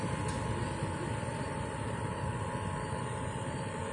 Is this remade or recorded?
remade